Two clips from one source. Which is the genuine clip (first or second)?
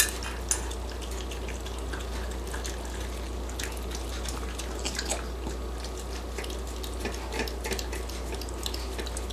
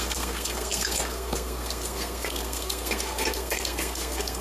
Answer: first